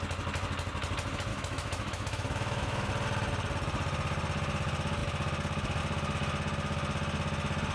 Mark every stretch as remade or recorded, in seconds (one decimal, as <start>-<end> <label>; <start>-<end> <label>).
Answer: 0.0-1.3 recorded; 1.3-2.9 remade; 2.9-7.7 recorded